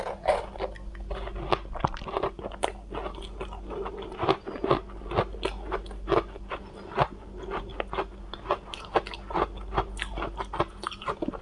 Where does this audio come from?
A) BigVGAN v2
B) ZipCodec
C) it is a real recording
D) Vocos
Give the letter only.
C